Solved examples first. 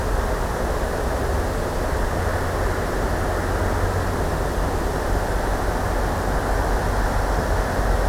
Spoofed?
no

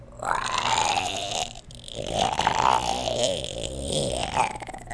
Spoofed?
no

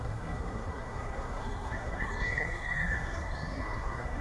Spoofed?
yes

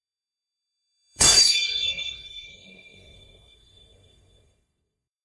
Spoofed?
yes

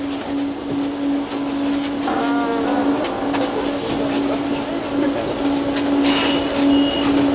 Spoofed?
no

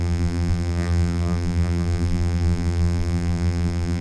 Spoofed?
yes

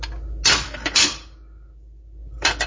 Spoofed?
no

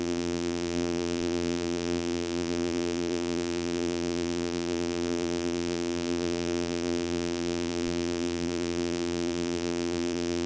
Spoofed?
yes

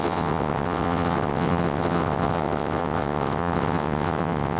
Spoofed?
yes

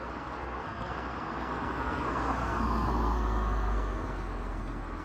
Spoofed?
yes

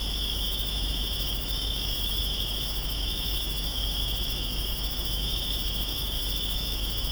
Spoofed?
yes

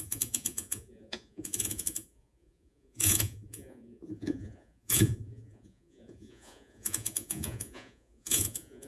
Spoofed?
yes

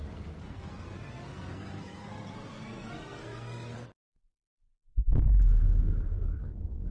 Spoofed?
yes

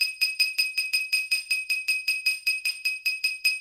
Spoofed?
yes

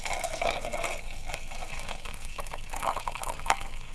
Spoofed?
yes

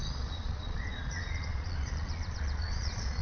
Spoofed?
yes